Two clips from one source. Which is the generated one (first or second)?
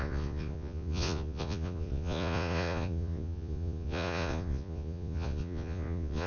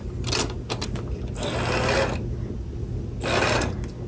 first